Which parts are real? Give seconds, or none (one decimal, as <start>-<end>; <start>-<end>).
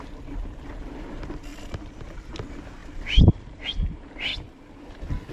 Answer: 0.0-1.5; 2.3-2.8; 3.3-5.3